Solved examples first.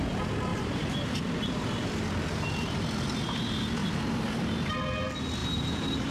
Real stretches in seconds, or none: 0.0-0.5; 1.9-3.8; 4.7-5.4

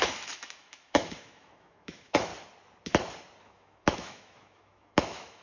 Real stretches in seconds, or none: 2.3-3.4

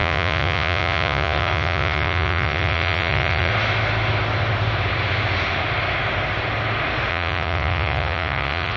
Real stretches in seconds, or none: 3.5-7.1

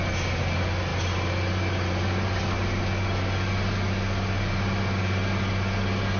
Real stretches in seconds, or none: 0.0-6.2